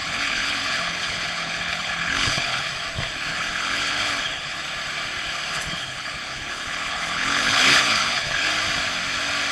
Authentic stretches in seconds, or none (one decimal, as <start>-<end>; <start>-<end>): 2.7-3.3; 4.6-5.5; 8.5-9.5